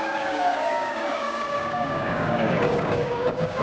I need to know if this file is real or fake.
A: fake